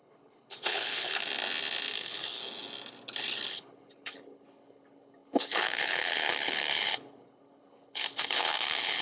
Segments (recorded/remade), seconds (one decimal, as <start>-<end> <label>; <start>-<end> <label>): 0.0-1.2 remade; 1.2-1.9 recorded; 1.9-2.4 remade; 2.4-3.5 recorded; 3.5-9.0 remade